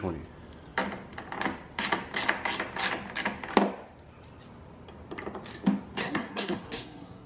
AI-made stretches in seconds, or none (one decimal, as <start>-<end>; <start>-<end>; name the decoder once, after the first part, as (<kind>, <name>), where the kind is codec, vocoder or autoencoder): 6.0-7.3 (codec, SNAC)